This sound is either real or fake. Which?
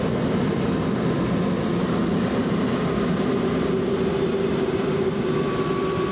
real